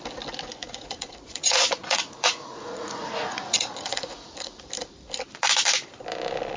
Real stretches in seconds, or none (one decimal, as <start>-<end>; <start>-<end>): 0.0-0.6; 4.6-6.6

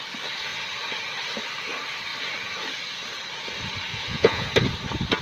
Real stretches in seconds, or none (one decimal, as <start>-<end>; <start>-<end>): 0.0-3.9; 4.5-5.2

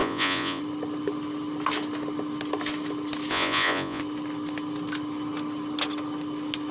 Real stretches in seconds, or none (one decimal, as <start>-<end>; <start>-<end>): 0.6-3.3; 4.0-6.7

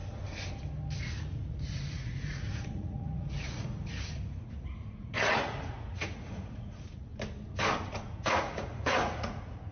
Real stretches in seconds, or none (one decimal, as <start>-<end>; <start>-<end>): 0.0-1.0; 7.1-7.9

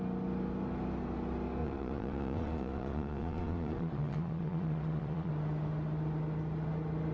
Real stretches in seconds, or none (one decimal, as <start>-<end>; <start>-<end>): 0.0-1.6; 5.3-7.1